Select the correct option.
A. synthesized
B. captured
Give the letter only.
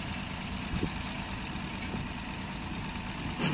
B